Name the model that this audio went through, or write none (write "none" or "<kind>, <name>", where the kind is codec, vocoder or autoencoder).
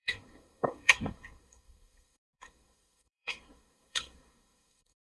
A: codec, SNAC